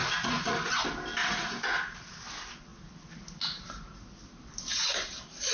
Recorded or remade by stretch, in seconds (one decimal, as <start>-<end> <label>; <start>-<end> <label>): 0.0-0.7 remade; 0.7-1.2 recorded; 1.2-2.2 remade; 2.2-5.5 recorded